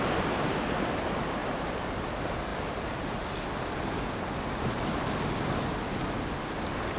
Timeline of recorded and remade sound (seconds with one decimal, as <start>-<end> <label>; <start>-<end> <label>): 0.0-7.0 recorded